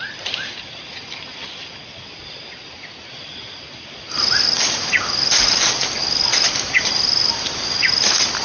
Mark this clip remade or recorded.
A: recorded